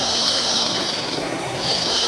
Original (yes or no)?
no